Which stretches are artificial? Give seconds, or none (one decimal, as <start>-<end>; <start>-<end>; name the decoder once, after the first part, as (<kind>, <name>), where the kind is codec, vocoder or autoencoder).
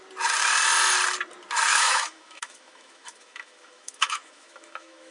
1.7-5.1 (autoencoder, DAC-VAE)